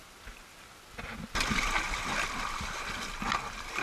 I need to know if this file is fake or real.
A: real